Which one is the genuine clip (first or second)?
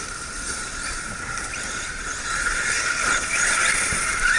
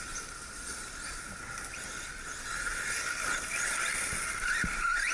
second